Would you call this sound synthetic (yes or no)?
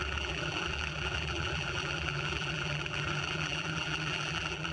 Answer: yes